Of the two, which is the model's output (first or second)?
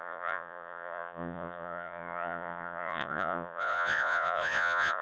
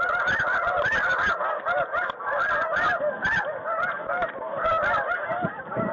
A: first